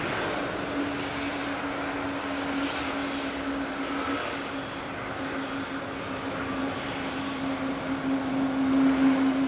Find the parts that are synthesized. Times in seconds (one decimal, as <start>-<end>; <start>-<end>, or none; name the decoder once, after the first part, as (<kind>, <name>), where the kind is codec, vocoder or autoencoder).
none